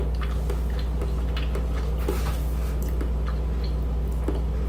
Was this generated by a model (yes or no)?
no